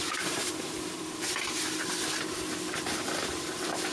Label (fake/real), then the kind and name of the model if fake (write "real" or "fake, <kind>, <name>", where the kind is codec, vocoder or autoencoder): real